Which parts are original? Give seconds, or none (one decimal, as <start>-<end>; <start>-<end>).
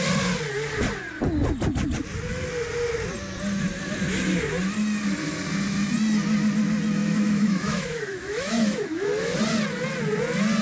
0.0-7.0; 9.4-10.6